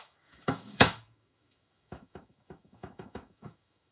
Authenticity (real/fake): fake